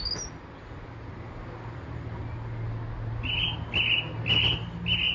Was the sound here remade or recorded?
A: recorded